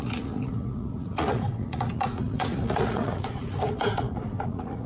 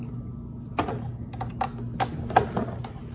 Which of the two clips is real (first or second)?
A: second